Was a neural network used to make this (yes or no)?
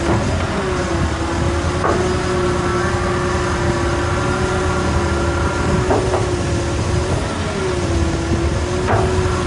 no